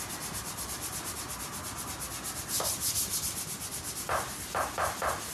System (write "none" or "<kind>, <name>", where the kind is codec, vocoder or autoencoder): none